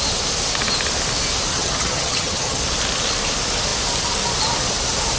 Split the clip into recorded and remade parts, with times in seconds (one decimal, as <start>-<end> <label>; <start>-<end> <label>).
0.0-1.5 recorded; 1.5-2.6 remade; 2.6-5.2 recorded